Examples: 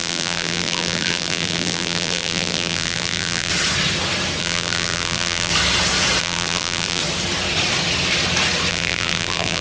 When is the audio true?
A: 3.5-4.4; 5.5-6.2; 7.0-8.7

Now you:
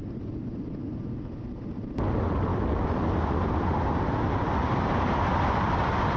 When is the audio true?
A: 0.0-6.2

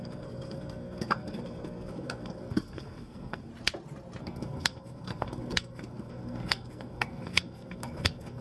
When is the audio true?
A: 3.5-4.2

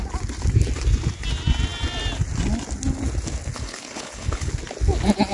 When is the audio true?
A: 0.0-3.5; 4.5-5.3

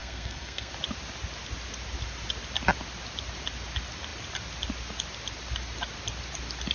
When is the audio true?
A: 0.7-6.7

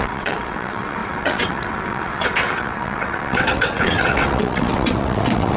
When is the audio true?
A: none